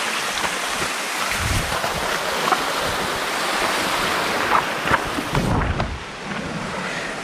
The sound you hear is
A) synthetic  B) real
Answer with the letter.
B